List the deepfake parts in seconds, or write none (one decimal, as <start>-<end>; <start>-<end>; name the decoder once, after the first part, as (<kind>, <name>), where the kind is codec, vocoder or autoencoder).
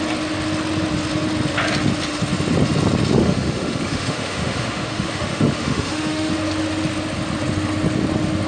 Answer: 3.2-6.3 (autoencoder, DAC-VAE)